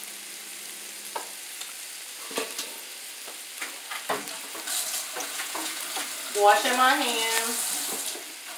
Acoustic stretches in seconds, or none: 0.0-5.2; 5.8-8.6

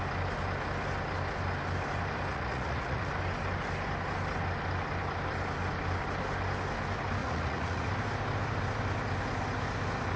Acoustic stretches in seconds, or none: 0.0-2.3; 3.1-7.2; 7.9-10.2

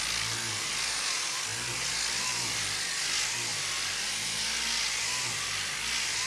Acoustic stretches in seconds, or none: 0.0-6.3

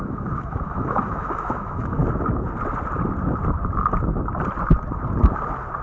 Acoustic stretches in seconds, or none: 2.0-5.8